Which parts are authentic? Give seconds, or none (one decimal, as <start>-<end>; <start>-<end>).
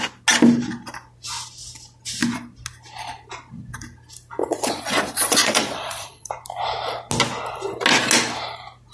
0.0-4.4; 6.3-8.9